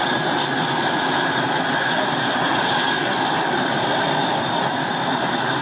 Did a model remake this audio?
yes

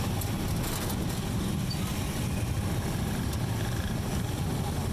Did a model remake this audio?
no